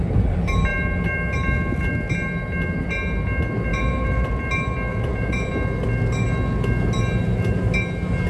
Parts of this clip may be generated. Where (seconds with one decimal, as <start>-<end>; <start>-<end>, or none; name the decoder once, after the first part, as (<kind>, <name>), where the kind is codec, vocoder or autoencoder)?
3.7-4.3 (vocoder, Vocos); 4.9-5.5